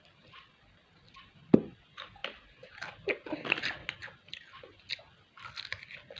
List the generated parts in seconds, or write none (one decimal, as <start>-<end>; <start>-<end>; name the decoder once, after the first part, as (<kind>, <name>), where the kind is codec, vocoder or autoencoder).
none